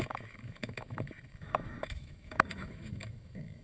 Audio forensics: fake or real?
fake